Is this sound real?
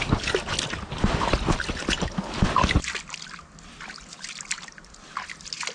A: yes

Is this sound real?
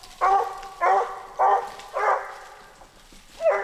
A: yes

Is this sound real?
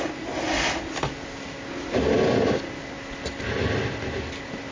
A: yes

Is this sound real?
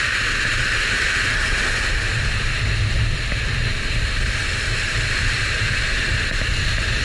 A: yes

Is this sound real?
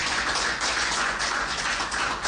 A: no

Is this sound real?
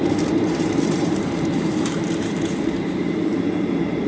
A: no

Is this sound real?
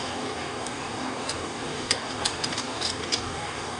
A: no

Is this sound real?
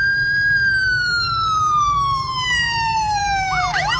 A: no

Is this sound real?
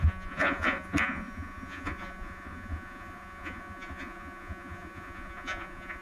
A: no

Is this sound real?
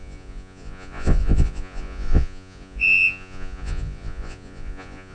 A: no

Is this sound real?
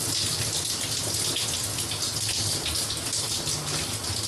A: yes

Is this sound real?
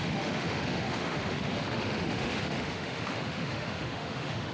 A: no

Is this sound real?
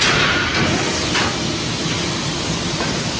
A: yes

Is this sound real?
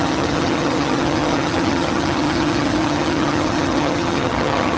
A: no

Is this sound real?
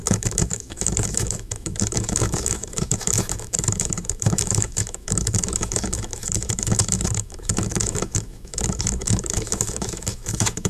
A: no